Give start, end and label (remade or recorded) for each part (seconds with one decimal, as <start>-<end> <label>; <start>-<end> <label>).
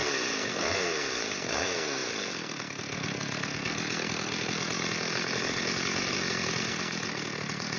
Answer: 0.0-7.8 remade